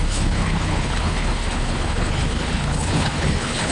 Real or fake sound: fake